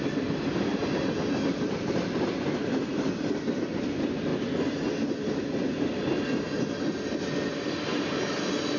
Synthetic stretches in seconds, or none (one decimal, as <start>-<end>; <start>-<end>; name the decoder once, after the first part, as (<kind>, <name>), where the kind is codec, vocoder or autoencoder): none